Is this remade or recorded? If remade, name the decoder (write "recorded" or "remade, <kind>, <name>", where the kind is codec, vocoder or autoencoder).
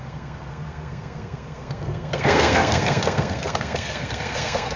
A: remade, codec, SNAC